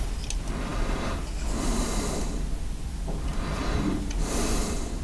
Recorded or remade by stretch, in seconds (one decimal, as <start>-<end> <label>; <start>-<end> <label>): 0.0-5.0 recorded